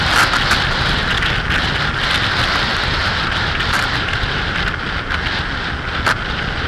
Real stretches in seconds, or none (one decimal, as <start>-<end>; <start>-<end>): 0.0-2.7; 4.6-6.7